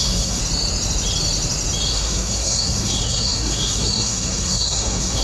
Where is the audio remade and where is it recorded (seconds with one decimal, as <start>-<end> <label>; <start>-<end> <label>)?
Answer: 0.0-0.4 remade; 0.4-1.9 recorded; 1.9-5.2 remade